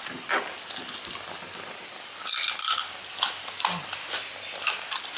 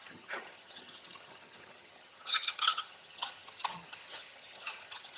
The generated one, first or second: second